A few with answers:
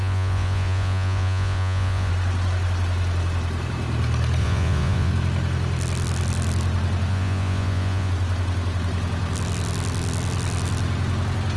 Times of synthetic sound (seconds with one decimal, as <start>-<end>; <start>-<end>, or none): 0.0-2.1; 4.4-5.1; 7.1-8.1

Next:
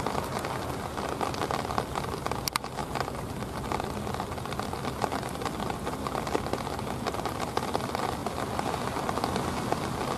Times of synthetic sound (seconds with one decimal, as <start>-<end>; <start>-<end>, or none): none

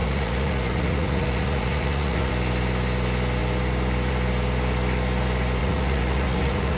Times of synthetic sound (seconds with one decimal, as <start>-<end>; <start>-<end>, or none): 0.0-2.3; 5.6-6.8

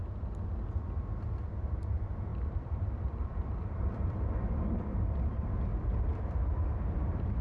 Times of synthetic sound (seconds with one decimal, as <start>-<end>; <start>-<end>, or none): 2.3-5.4

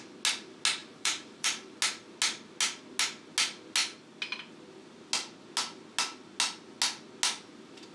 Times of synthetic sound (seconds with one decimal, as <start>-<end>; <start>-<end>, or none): 0.8-1.8

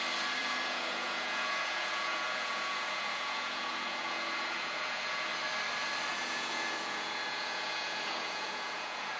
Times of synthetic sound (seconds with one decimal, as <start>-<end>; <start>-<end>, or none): 0.4-5.3; 6.1-9.2